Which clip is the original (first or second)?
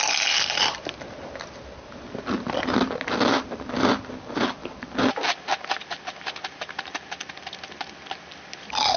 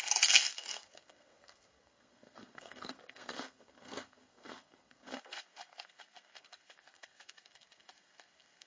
first